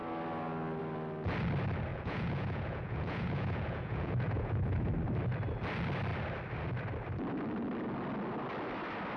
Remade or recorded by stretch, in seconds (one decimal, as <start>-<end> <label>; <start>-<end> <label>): 0.0-1.9 recorded; 1.9-4.9 remade; 4.9-9.2 recorded